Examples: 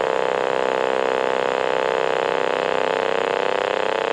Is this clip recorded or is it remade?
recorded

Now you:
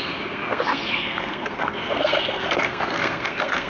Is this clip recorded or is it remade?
remade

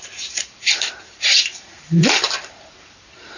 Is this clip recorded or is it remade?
remade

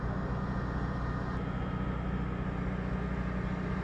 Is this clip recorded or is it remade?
recorded